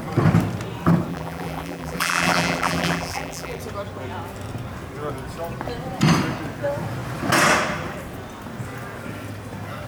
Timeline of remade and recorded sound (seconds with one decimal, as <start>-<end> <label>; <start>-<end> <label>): 0.0-1.1 recorded; 1.1-3.6 remade; 3.6-9.9 recorded